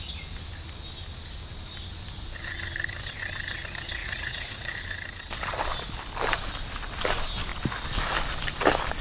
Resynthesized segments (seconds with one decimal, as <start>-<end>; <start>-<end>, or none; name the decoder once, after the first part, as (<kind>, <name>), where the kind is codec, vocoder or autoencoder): 4.0-4.8 (vocoder, Vocos)